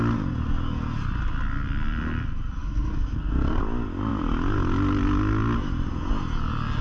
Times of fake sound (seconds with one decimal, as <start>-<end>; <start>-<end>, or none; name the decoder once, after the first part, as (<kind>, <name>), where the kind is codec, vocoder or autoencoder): 2.6-3.6 (codec, SNAC)